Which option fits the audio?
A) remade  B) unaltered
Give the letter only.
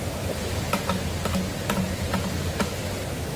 B